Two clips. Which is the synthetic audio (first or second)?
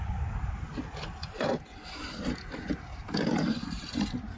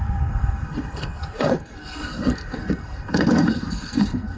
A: second